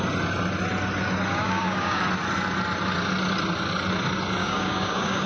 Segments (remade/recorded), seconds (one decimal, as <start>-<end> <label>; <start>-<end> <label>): 0.0-1.3 recorded; 1.3-2.0 remade; 2.0-4.4 recorded; 4.4-5.3 remade